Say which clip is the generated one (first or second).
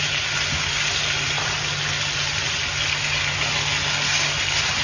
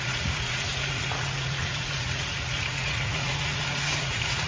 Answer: second